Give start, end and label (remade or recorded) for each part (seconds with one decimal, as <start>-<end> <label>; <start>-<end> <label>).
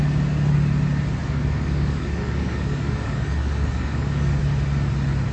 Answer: 0.0-1.2 recorded; 1.2-4.4 remade; 4.4-5.3 recorded